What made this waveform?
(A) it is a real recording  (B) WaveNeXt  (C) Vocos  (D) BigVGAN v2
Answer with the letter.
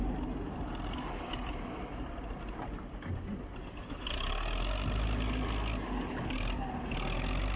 A